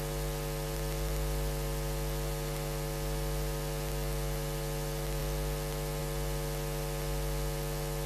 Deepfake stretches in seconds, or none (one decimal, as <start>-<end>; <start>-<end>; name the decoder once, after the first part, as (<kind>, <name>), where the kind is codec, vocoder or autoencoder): none